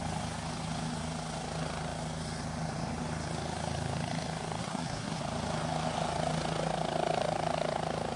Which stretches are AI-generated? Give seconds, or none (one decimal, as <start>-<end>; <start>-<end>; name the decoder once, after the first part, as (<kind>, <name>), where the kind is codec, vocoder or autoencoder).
4.6-5.2 (codec, SNAC)